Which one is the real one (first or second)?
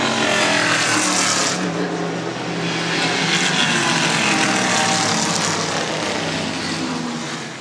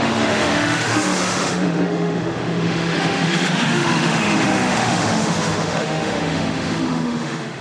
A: first